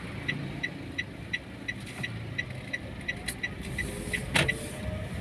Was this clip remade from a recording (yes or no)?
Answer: no